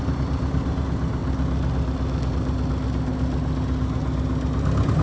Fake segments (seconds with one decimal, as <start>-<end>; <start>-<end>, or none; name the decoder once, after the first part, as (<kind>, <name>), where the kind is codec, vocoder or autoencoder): none

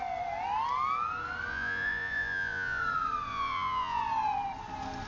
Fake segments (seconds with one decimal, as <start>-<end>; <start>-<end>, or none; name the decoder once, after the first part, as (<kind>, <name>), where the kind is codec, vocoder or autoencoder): 1.5-2.8 (vocoder, Vocos); 3.3-4.0

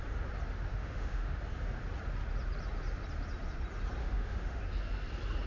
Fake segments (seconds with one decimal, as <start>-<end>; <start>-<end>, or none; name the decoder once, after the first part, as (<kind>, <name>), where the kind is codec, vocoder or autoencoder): 0.7-1.4 (autoencoder, DAC-VAE); 4.0-4.6

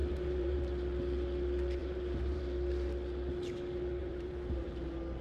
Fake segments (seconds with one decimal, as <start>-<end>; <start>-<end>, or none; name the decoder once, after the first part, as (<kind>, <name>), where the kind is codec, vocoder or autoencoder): 0.0-0.6 (vocoder, BigVGAN v2); 1.8-2.4; 4.0-4.7

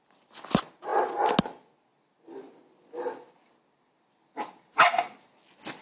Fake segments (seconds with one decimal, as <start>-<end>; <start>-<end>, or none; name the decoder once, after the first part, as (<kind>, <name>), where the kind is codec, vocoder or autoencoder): none